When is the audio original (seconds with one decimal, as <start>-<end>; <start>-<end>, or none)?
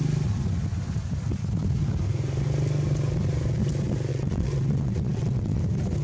0.0-4.1; 5.6-6.0